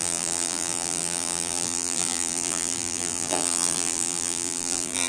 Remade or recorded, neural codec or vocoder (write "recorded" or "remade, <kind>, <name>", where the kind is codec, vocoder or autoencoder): remade, vocoder, BigVGAN v2